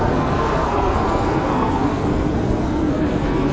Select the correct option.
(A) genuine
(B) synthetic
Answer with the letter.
B